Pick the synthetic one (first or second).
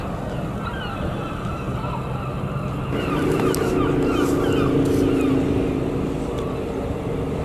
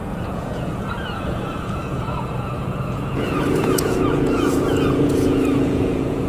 second